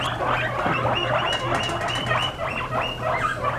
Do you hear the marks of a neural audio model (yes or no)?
no